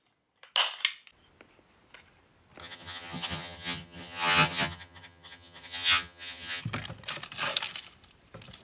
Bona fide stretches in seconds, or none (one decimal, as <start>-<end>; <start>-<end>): 0.0-2.6; 6.6-8.6